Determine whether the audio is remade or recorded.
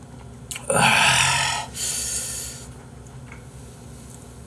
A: recorded